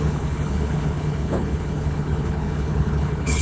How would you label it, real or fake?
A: fake